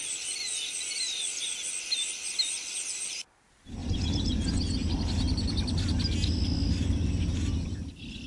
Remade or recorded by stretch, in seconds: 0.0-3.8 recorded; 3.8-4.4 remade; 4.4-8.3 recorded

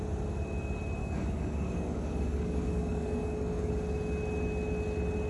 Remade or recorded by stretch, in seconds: 0.0-1.0 recorded; 1.0-3.7 remade; 3.7-5.3 recorded